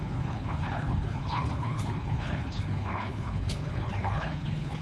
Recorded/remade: remade